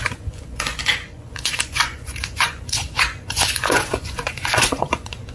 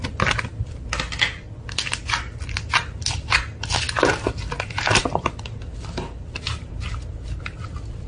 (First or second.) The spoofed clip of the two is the first